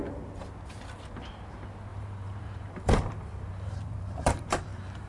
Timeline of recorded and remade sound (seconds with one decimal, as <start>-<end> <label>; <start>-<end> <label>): 0.0-1.9 recorded; 1.9-5.1 remade